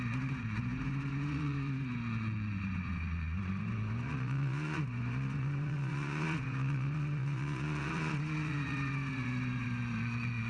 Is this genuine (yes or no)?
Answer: no